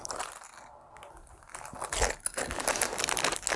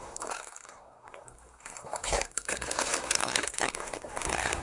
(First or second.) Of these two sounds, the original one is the first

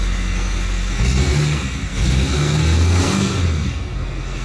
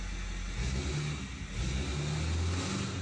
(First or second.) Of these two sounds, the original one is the second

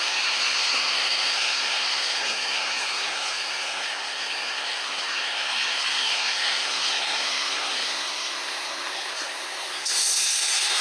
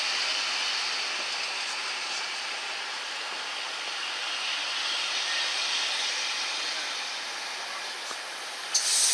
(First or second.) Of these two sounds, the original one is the second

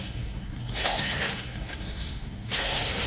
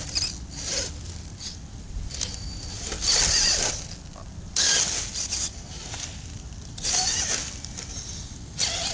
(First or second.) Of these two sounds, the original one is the second